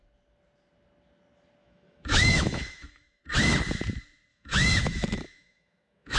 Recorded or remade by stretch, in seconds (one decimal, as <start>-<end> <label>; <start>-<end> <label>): 0.0-1.6 recorded; 1.6-3.2 remade; 3.2-4.3 recorded; 4.3-6.2 remade